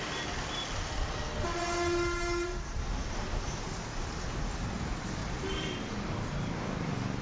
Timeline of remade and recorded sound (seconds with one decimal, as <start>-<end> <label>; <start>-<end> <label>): 0.0-2.9 recorded; 2.9-3.6 remade; 3.6-5.2 recorded; 5.2-5.9 remade; 5.9-7.2 recorded